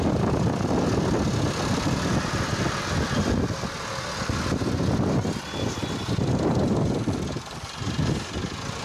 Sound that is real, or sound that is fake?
real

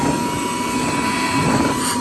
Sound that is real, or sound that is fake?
real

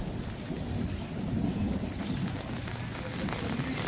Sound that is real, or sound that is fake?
real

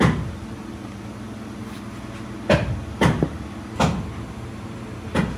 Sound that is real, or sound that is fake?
real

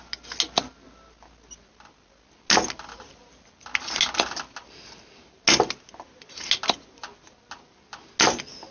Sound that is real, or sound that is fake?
real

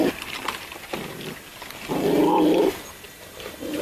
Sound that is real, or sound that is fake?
real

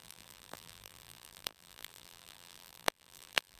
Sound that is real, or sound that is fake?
fake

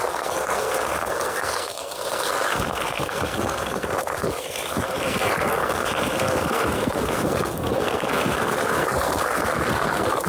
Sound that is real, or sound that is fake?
fake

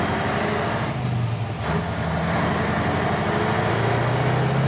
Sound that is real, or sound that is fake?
real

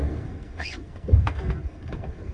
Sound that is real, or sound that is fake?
fake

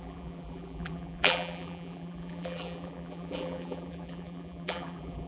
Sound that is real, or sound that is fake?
fake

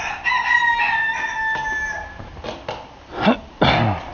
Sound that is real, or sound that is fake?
real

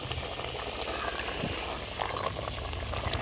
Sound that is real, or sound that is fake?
real